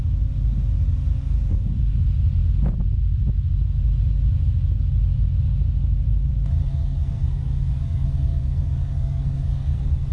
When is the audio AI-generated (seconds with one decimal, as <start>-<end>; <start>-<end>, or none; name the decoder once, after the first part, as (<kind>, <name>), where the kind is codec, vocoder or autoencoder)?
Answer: 6.6-10.1 (codec, SNAC)